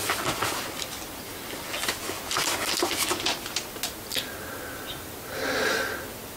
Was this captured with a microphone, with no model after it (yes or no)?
yes